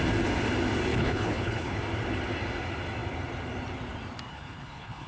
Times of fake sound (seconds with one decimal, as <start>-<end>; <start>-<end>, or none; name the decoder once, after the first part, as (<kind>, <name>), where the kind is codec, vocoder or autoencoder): 0.9-1.8 (codec, HILCodec); 4.3-5.1